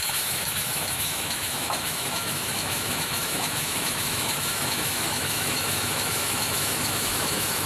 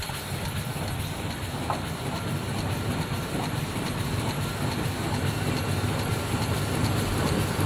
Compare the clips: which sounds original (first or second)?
second